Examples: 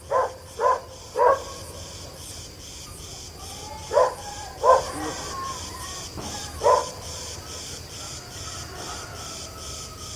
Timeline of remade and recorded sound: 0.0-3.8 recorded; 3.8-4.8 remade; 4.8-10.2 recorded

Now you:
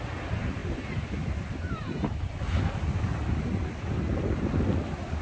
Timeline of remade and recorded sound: 0.0-0.6 recorded; 0.6-2.3 remade; 2.3-3.3 recorded; 3.3-4.4 remade; 4.4-5.2 recorded

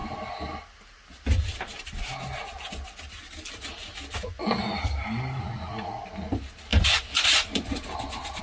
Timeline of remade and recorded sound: 0.0-6.7 recorded; 6.7-8.4 remade

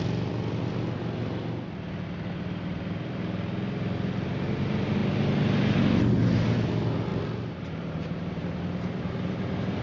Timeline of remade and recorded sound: 0.0-7.1 recorded; 7.1-8.4 remade; 8.4-9.8 recorded

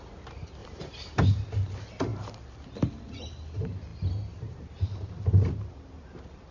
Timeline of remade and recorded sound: 0.0-0.6 recorded; 0.6-1.2 remade; 1.2-6.5 recorded

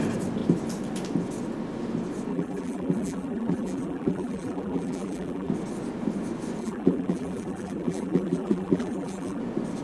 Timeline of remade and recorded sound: 0.0-2.3 recorded; 2.3-5.5 remade; 5.5-6.6 recorded; 6.6-9.4 remade; 9.4-9.8 recorded

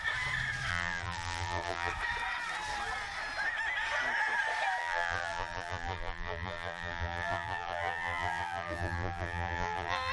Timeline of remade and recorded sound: 0.0-0.7 recorded; 0.7-1.9 remade; 1.9-4.8 recorded; 4.8-10.1 remade

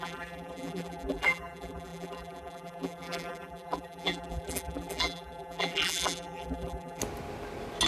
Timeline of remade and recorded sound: 0.0-7.0 remade; 7.0-7.9 recorded